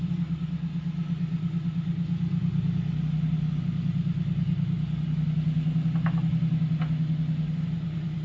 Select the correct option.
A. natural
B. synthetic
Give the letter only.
A